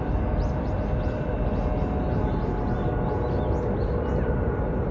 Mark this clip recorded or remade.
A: recorded